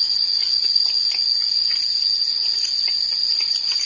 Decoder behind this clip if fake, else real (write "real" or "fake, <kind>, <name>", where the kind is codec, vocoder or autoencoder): real